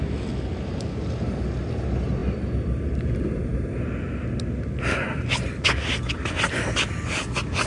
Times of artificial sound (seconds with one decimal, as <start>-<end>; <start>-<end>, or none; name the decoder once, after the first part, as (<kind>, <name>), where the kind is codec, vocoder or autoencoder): none